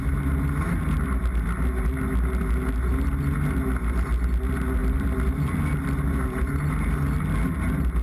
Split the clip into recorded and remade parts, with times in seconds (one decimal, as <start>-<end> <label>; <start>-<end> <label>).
0.0-4.8 recorded; 4.8-5.5 remade; 5.5-8.0 recorded